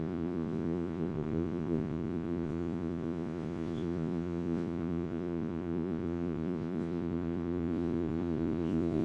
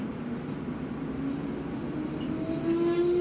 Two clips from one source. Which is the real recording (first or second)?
second